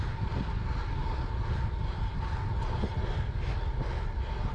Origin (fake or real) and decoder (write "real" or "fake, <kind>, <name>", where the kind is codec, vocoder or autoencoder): real